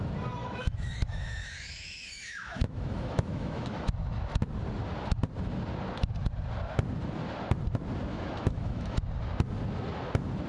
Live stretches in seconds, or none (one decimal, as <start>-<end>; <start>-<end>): 0.0-0.4; 3.9-8.1; 9.0-10.5

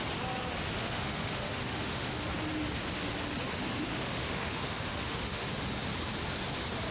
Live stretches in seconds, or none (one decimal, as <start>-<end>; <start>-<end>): 0.0-0.8; 2.1-3.9; 5.5-6.9

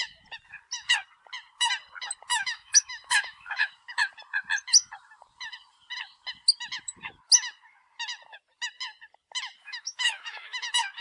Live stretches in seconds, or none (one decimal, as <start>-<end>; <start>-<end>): 0.0-2.3; 3.7-9.6; 10.6-11.0

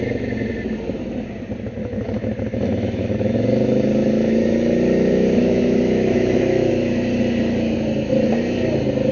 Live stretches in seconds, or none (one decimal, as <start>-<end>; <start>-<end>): 0.0-1.8; 6.7-9.1

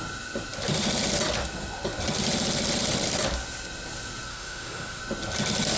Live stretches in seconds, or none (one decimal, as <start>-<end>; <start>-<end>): 0.0-4.3; 5.0-5.8

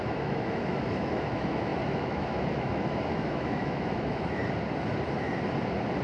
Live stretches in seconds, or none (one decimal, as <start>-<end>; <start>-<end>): 4.4-6.0